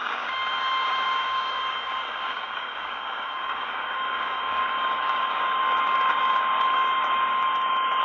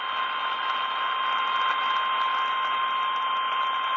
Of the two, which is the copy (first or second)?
first